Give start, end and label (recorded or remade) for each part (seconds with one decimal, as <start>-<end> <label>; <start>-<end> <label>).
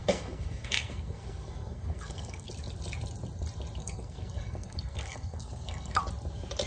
0.0-2.5 remade; 2.5-3.8 recorded; 3.8-6.0 remade; 6.0-6.7 recorded